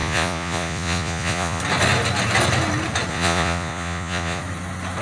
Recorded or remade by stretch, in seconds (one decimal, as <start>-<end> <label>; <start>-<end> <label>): 0.0-1.6 remade; 1.6-3.1 recorded; 3.1-4.4 remade; 4.4-5.0 recorded

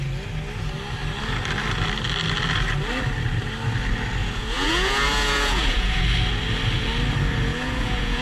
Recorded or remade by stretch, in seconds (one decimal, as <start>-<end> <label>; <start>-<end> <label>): 0.0-4.2 recorded; 4.2-6.0 remade; 6.0-7.5 recorded; 7.5-8.2 remade

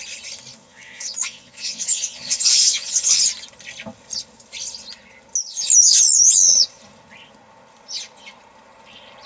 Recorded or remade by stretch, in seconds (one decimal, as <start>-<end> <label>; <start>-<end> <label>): 0.0-0.6 recorded; 0.6-3.2 remade; 3.2-9.3 recorded

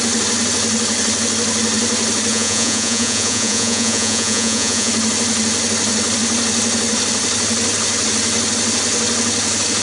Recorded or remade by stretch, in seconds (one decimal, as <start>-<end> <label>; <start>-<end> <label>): 0.0-2.3 recorded; 2.3-4.9 remade; 4.9-9.8 recorded

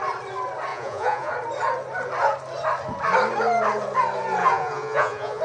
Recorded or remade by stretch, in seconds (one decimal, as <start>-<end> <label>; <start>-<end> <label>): 0.0-0.7 recorded; 0.7-1.3 remade; 1.3-4.4 recorded; 4.4-5.4 remade